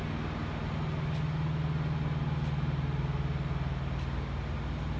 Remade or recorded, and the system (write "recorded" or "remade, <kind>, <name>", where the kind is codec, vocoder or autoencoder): recorded